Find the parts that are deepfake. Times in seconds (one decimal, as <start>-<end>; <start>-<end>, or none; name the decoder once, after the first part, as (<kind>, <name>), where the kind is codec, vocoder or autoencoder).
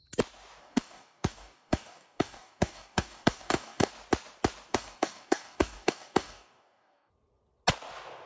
0.6-3.9 (codec, DAC); 4.7-7.1